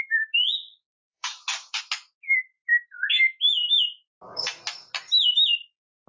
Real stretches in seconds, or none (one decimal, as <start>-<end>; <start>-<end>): 0.0-1.0; 1.8-6.1